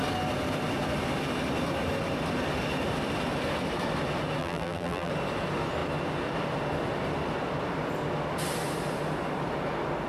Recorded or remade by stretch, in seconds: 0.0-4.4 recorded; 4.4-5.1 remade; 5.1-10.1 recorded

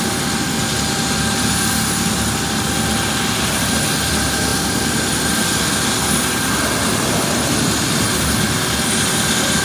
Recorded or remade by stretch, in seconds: 0.0-9.6 recorded

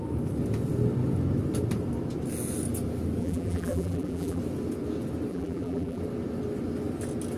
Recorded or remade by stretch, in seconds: 0.0-3.2 recorded; 3.2-4.4 remade; 4.4-5.3 recorded; 5.3-6.0 remade; 6.0-7.4 recorded

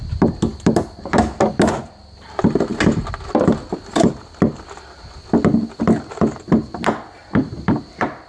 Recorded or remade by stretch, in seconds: 0.0-8.3 recorded

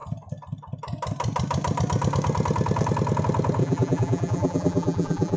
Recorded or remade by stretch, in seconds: 0.0-3.6 recorded; 3.6-5.4 remade

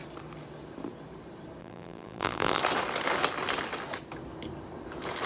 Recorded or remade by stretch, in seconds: 0.0-1.6 recorded; 1.6-2.6 remade; 2.6-5.3 recorded

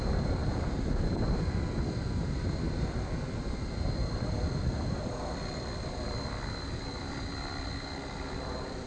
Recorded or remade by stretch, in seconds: 0.0-0.4 remade; 0.4-5.0 recorded; 5.0-8.9 remade